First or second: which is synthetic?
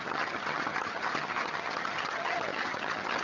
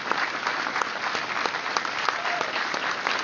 first